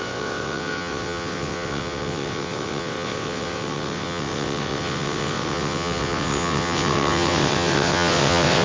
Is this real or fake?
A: fake